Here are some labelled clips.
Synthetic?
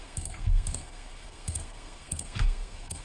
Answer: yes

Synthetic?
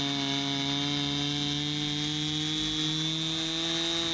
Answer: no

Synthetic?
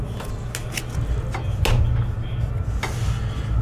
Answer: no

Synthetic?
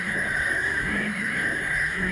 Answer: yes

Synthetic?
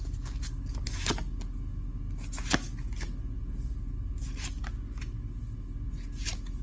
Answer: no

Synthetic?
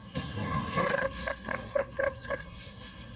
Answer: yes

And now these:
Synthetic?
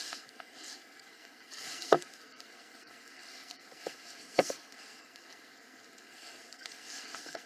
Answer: yes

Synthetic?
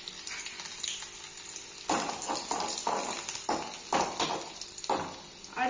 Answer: no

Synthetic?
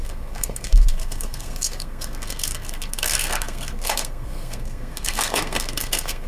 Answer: yes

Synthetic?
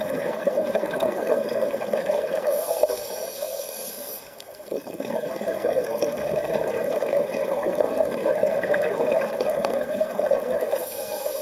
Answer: yes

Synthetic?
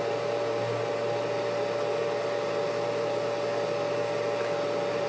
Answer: no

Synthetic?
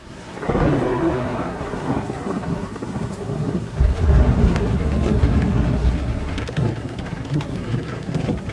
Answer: yes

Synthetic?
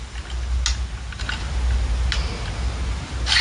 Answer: no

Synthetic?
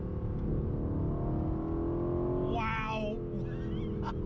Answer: no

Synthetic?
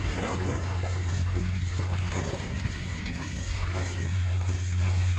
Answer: yes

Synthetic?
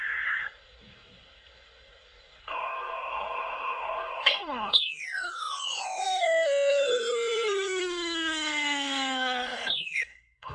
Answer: yes